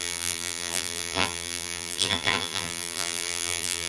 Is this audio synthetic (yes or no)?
yes